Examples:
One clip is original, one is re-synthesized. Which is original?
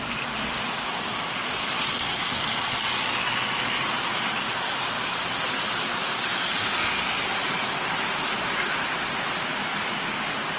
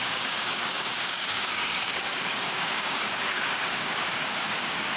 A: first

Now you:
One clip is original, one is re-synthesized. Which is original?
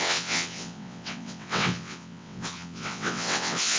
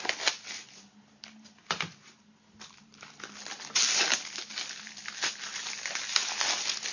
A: second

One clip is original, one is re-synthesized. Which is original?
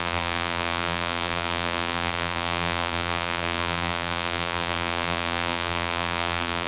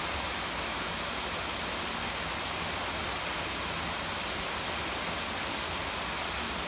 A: second